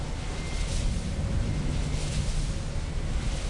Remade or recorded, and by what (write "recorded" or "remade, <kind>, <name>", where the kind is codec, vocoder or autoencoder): recorded